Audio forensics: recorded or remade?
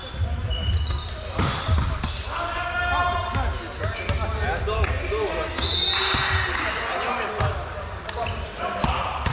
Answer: recorded